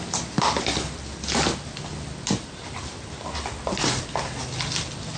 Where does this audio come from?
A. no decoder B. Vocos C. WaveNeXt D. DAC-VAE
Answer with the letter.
A